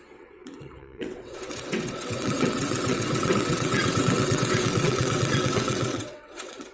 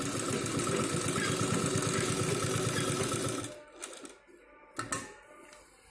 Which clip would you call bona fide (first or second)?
second